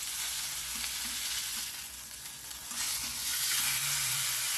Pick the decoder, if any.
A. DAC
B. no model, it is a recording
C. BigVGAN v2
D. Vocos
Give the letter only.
D